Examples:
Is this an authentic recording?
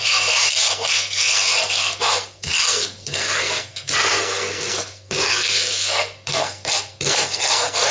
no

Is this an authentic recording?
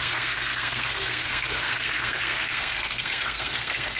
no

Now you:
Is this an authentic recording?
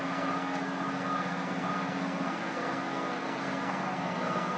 no